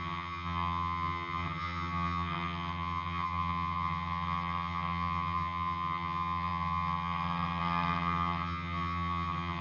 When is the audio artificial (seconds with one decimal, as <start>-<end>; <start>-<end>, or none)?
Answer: 0.0-9.6